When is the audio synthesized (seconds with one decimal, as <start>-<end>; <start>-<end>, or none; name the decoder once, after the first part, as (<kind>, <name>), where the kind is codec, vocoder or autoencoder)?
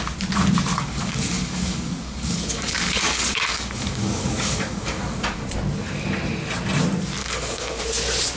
0.7-5.5 (codec, DAC); 7.2-7.8